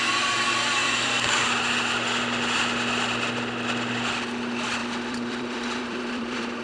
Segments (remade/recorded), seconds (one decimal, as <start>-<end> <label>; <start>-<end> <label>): 0.0-0.8 recorded; 0.8-1.4 remade; 1.4-4.8 recorded; 4.8-6.6 remade